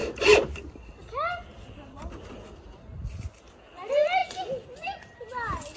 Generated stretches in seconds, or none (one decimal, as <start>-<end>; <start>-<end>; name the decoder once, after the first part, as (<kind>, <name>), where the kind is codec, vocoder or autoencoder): none